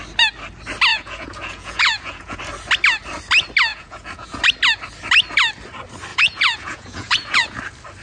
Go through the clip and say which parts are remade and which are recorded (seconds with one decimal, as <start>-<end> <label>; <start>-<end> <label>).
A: 0.0-0.9 recorded; 0.9-2.4 remade; 2.4-3.7 recorded; 3.7-4.4 remade; 4.4-6.1 recorded; 6.1-7.6 remade; 7.6-8.0 recorded